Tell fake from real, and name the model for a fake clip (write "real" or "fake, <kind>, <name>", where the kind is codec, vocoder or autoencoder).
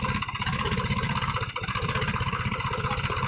real